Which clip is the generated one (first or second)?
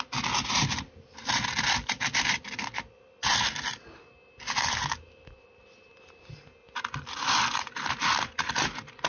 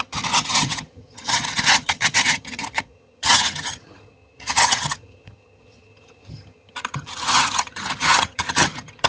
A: second